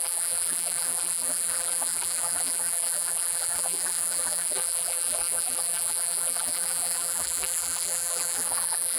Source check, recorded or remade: remade